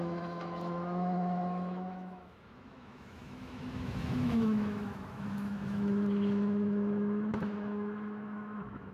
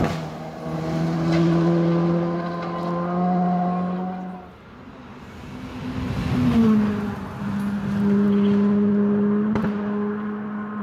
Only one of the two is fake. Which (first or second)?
first